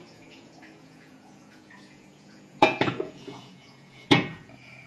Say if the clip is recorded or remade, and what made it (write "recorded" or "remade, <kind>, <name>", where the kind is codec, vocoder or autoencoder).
remade, vocoder, Vocos